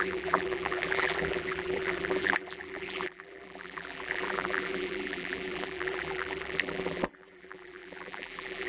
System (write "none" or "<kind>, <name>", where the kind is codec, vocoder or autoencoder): vocoder, BigVGAN v2